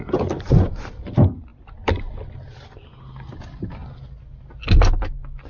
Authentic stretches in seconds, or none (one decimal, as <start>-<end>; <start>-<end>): 0.0-5.5